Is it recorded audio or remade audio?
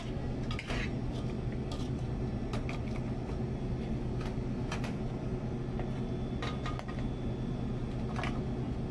recorded